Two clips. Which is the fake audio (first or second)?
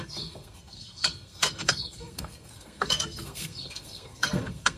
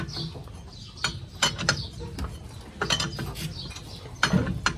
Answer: first